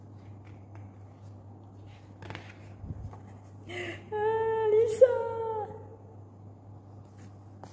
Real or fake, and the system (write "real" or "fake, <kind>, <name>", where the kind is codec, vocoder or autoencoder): real